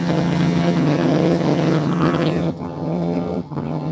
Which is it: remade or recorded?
remade